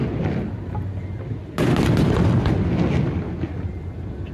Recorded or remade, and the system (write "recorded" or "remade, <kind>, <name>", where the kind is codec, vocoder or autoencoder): recorded